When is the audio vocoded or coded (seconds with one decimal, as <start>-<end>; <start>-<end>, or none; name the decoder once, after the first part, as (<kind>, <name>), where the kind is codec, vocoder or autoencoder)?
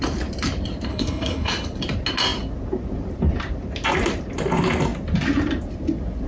0.9-1.5 (codec, HILCodec)